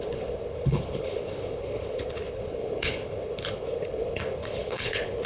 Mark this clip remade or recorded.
remade